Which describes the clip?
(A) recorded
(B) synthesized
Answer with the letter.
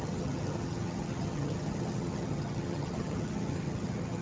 B